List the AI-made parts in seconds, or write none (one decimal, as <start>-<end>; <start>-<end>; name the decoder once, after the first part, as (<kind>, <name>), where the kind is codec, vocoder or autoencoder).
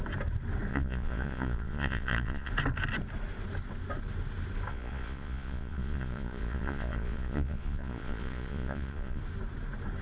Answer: 0.7-2.5 (vocoder, Vocos); 4.7-9.2